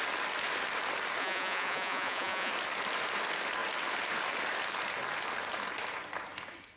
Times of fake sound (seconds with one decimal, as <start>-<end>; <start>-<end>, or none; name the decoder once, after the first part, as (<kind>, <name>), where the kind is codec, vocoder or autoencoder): 1.2-2.5 (vocoder, Vocos)

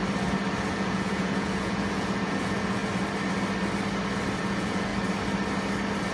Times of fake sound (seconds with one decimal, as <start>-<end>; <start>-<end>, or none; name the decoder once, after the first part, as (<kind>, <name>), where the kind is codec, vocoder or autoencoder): 0.7-2.8 (vocoder, Vocos); 4.4-4.9

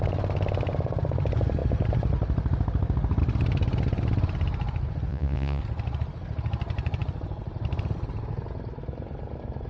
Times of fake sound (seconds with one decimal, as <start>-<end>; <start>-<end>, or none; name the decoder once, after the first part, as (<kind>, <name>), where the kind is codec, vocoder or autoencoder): 5.1-5.6 (vocoder, Vocos)

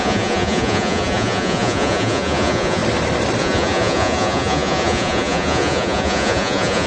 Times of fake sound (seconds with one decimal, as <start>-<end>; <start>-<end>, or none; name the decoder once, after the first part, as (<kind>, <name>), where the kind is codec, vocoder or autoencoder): 0.0-2.8 (vocoder, Vocos); 3.4-6.9

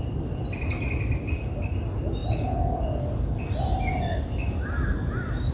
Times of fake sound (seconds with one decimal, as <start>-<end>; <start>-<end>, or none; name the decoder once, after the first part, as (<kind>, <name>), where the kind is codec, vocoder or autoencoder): none

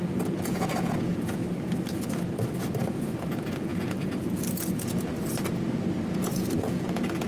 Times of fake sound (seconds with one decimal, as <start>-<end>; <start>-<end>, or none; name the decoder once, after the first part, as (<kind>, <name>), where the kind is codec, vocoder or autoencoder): 0.0-1.4 (vocoder, Vocos); 2.9-5.1; 6.1-7.3

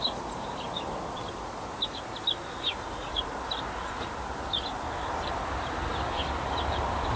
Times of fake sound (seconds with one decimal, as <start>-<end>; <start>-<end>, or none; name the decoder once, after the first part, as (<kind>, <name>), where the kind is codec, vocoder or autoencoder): none